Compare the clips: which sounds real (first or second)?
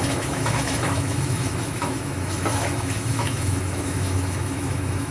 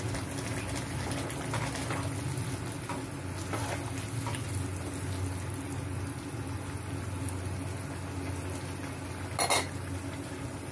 second